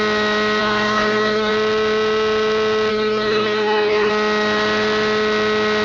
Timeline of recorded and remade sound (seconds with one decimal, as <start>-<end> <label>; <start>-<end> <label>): 0.0-0.6 recorded; 0.6-1.5 remade; 1.5-2.9 recorded; 2.9-4.1 remade; 4.1-5.8 recorded